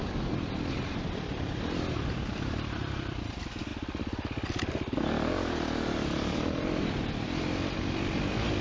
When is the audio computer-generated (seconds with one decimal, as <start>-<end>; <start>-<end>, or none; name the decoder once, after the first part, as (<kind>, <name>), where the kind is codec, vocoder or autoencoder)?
0.0-8.6 (vocoder, BigVGAN v2)